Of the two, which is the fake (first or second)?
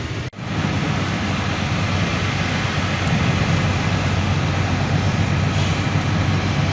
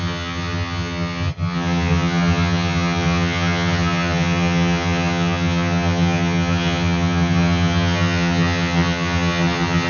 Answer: second